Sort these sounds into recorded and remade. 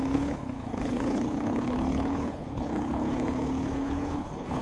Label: remade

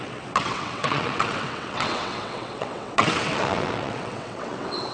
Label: remade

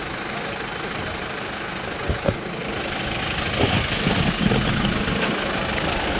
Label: recorded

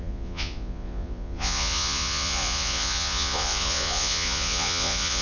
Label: remade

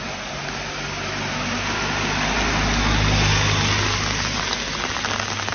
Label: recorded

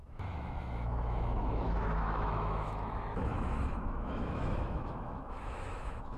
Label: remade